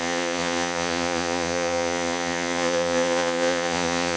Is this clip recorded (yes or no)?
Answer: no